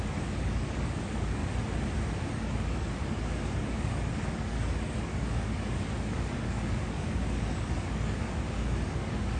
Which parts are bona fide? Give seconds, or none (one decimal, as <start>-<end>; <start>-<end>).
1.4-2.3